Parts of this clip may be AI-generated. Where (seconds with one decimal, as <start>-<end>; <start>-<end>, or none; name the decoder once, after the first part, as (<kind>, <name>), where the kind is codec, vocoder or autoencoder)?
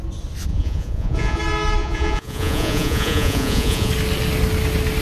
0.5-1.4 (vocoder, Vocos); 1.8-3.9